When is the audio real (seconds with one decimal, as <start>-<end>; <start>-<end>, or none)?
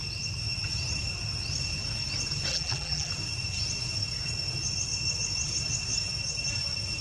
0.0-2.5; 3.1-7.0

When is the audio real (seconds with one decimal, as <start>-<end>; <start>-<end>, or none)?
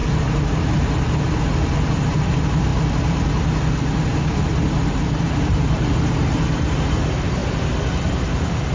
7.4-8.7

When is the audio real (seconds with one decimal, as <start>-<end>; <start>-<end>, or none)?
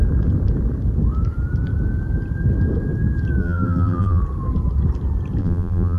0.0-3.4; 4.2-5.4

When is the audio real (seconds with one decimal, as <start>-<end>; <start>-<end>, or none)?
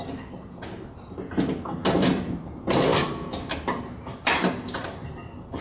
0.0-2.9; 5.0-5.6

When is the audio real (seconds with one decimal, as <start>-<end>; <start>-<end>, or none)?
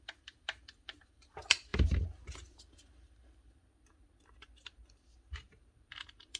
none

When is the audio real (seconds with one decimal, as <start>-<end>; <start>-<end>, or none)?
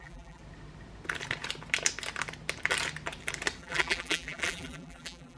0.4-3.6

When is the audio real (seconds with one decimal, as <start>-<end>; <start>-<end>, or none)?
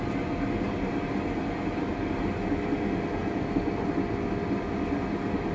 0.0-5.5